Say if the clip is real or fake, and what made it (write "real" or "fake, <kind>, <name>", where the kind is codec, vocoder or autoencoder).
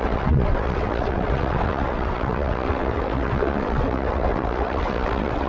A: fake, vocoder, WaveNeXt